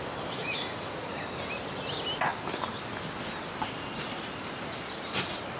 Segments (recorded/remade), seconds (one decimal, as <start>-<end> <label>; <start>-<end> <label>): 0.0-0.4 recorded; 0.4-1.2 remade; 1.2-5.6 recorded